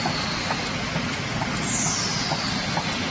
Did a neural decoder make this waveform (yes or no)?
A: no